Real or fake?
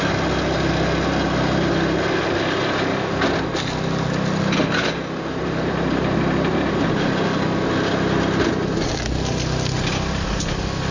real